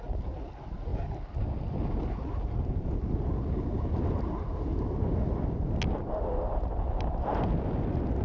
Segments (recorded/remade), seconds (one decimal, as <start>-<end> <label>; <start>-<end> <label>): 0.0-8.2 recorded